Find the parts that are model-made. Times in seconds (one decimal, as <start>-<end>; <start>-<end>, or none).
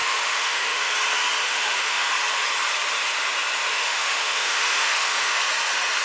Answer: 0.0-0.9; 1.4-2.1; 3.7-5.4